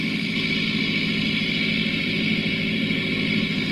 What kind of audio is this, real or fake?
real